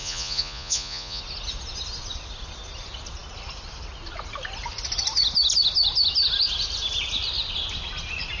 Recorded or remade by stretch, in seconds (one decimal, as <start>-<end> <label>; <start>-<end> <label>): 0.0-1.2 remade; 1.2-8.4 recorded